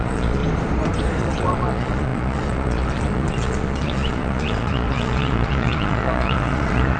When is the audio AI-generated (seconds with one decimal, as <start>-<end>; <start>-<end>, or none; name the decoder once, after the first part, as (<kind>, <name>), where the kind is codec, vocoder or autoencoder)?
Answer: 0.0-0.4 (vocoder, Vocos); 1.2-7.0